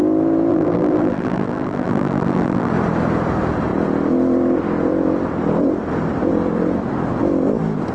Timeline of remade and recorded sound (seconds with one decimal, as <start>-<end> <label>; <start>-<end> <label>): 0.0-0.5 recorded; 0.5-2.7 remade; 2.7-7.9 recorded